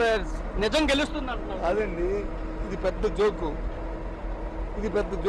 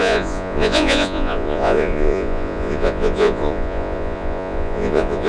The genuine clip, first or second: first